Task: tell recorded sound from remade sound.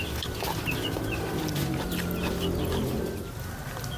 recorded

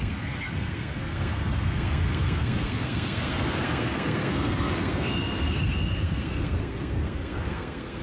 remade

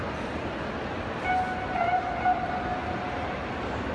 recorded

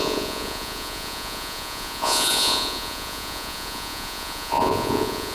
remade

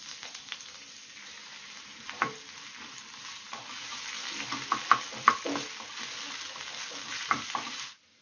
recorded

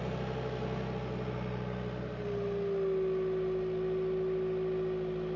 recorded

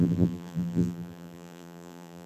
remade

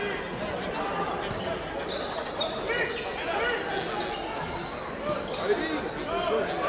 recorded